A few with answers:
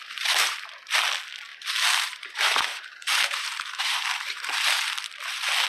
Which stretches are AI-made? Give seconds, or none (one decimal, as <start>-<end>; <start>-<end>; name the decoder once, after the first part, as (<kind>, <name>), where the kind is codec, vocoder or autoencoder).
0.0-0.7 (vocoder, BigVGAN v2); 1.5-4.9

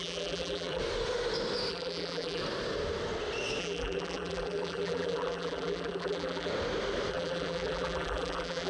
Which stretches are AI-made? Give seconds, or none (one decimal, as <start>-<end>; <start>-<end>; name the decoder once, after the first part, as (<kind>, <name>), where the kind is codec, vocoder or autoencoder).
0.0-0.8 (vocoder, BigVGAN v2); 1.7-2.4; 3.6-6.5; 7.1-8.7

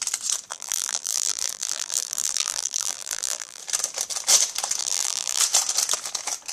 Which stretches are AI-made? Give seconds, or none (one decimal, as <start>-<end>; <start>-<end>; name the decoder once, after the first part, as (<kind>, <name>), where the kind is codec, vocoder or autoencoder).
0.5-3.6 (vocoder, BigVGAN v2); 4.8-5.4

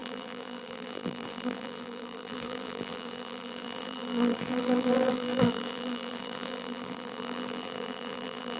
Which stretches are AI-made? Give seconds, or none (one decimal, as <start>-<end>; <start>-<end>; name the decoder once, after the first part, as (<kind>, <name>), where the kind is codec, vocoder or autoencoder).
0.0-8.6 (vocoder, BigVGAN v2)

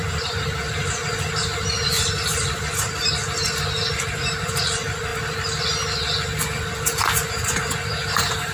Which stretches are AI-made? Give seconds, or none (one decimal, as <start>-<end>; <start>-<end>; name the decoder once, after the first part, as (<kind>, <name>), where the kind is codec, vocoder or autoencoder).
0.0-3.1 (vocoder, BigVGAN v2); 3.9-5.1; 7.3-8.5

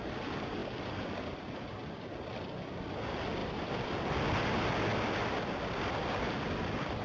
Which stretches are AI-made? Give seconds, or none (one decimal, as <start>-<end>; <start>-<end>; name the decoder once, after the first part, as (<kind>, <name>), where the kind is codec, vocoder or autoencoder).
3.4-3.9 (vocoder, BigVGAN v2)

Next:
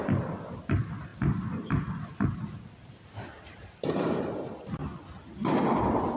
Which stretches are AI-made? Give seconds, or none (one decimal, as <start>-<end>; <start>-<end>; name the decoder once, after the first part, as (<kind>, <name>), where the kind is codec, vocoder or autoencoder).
0.0-4.8 (vocoder, BigVGAN v2)

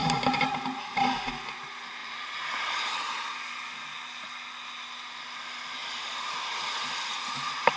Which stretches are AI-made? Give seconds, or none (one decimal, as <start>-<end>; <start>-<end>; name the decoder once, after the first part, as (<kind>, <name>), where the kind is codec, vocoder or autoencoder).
0.0-0.6 (vocoder, BigVGAN v2); 2.0-3.3